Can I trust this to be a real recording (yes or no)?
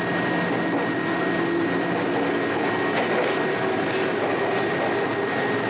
yes